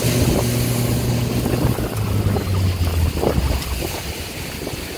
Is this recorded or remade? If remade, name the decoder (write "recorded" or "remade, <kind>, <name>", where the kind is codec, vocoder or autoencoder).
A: recorded